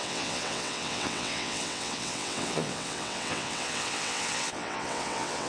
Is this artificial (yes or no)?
yes